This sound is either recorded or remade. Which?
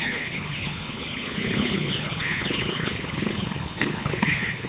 remade